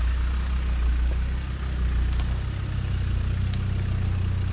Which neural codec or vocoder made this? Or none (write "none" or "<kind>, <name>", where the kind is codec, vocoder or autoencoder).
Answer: none